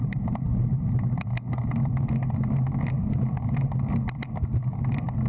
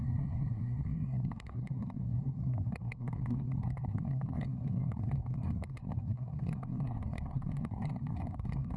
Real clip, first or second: first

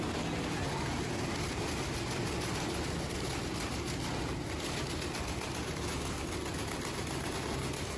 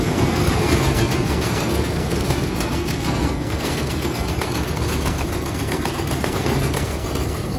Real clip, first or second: first